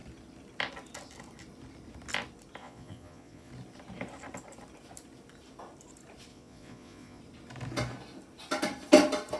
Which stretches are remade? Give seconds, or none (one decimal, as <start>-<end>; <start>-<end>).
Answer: 2.6-3.5; 6.3-7.2